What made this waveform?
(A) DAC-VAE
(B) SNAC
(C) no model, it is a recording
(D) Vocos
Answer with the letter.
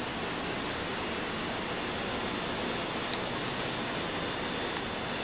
C